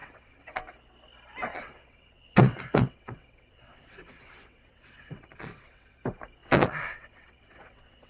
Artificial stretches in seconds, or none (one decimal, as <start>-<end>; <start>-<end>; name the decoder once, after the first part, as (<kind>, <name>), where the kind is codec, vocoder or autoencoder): 0.0-0.6 (vocoder, WaveNeXt); 1.5-6.0; 6.4-8.1